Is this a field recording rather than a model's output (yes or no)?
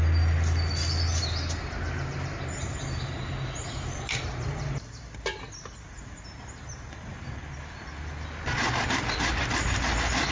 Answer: yes